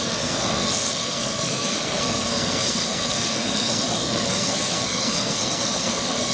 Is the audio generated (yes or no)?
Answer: yes